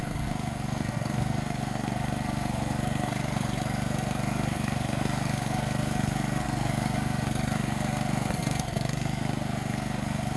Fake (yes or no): yes